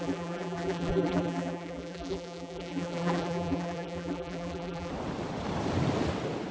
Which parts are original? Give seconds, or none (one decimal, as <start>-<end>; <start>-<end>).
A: 4.9-6.5